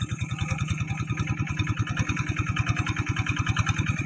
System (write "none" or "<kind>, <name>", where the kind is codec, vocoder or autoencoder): none